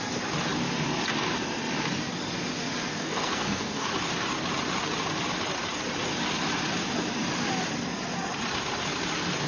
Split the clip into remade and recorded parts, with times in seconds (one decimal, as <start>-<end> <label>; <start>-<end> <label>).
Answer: 0.0-2.9 recorded; 2.9-3.9 remade; 3.9-9.5 recorded